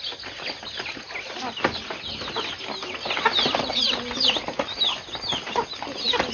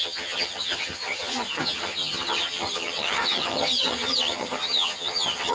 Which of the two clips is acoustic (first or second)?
first